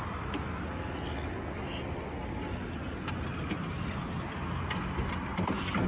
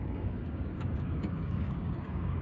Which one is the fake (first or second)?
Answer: second